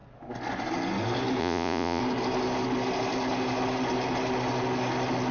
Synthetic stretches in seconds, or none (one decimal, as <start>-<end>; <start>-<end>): 1.4-2.0